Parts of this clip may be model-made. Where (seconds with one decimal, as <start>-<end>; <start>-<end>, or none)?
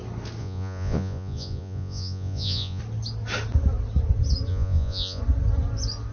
0.4-2.8; 4.5-5.2